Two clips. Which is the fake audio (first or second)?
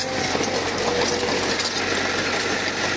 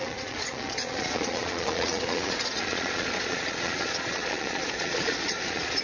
second